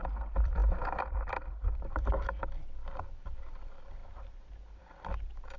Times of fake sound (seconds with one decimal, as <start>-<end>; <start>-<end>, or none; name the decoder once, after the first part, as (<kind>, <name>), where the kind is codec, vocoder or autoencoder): 0.0-5.6 (vocoder, BigVGAN v2)

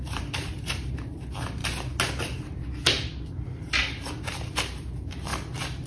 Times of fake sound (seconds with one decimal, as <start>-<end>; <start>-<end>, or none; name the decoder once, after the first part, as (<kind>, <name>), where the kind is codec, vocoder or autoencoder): 0.0-1.6 (vocoder, BigVGAN v2); 4.1-5.3

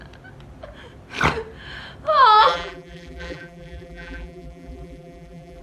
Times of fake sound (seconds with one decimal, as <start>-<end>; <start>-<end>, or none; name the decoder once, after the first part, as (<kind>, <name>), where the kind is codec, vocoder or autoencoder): 2.4-5.6 (vocoder, BigVGAN v2)